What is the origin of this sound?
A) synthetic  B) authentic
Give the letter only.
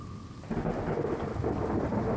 B